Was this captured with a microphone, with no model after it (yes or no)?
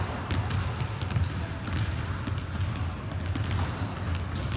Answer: yes